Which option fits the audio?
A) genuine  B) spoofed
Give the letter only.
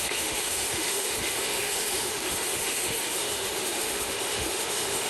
B